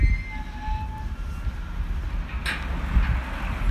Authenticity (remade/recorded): recorded